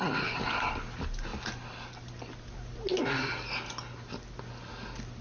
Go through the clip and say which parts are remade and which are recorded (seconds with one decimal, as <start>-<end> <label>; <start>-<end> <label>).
0.0-5.2 recorded